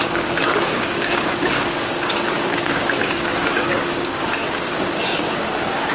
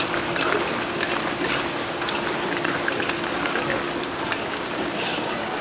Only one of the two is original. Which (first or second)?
second